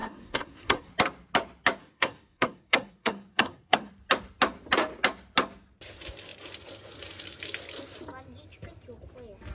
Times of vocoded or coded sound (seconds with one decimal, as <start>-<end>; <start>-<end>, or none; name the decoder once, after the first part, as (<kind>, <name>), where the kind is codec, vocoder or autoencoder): 0.0-0.9 (codec, SNAC); 1.8-3.9